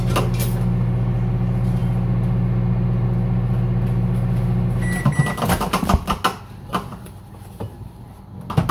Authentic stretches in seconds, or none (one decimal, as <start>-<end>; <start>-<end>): 0.0-6.9; 8.0-8.7